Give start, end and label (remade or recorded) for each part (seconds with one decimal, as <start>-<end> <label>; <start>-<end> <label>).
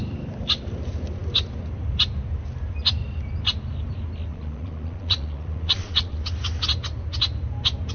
0.0-4.3 recorded; 4.3-6.2 remade; 6.2-7.9 recorded